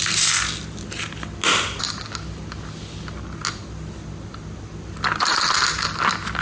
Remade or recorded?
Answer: recorded